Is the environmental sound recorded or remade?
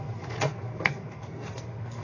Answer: remade